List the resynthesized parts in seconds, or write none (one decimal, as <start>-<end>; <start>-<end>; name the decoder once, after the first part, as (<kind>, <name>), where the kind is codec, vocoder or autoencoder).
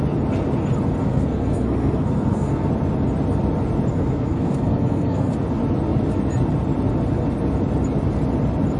1.0-2.7 (codec, SNAC); 3.9-5.3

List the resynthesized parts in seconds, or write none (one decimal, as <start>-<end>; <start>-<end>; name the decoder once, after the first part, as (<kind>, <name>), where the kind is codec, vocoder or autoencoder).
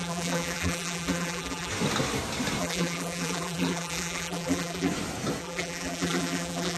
0.0-1.7 (vocoder, BigVGAN v2); 2.6-4.9; 5.4-6.8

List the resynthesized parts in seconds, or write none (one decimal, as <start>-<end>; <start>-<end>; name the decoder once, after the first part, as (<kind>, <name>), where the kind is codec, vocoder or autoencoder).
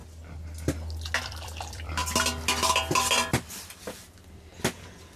1.2-2.0 (vocoder, BigVGAN v2)